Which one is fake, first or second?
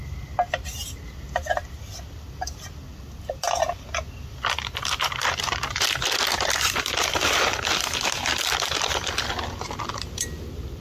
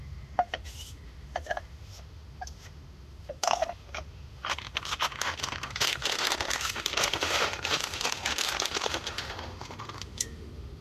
second